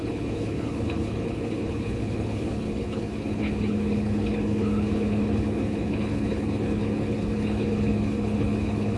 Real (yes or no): no